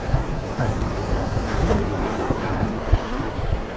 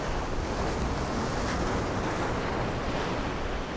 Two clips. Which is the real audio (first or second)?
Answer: second